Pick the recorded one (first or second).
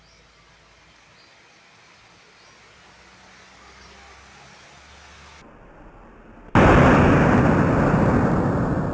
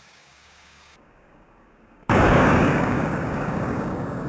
first